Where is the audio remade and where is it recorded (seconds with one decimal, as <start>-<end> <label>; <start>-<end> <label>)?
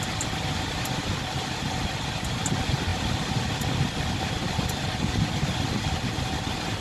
0.0-6.8 recorded